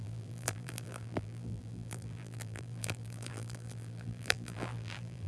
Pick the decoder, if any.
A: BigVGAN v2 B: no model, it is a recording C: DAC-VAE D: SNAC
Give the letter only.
A